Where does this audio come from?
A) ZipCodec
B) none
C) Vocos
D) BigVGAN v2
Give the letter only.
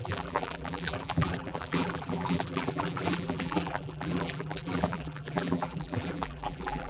D